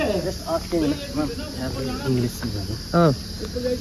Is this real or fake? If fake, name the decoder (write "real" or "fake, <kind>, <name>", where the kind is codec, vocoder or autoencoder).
real